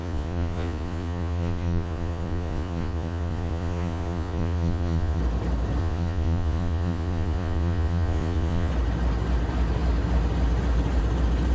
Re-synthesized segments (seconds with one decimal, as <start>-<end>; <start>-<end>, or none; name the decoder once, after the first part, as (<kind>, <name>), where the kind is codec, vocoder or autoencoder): 0.0-5.2 (vocoder, Vocos); 5.8-8.7